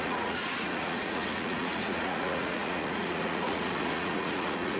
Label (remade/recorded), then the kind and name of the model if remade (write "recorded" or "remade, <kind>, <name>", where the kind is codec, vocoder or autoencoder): remade, vocoder, Vocos